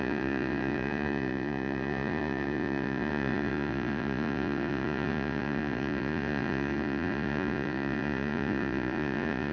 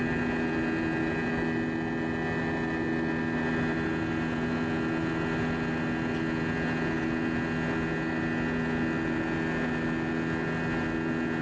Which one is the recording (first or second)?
second